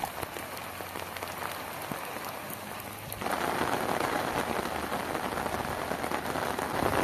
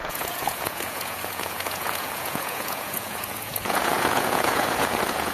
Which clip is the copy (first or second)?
second